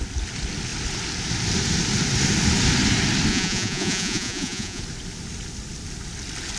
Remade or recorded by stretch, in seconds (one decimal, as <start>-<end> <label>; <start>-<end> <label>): 0.0-3.3 recorded; 3.3-4.8 remade; 4.8-6.6 recorded